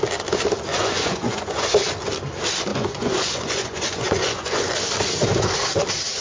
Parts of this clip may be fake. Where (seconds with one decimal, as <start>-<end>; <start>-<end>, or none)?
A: 0.7-1.9; 2.7-4.7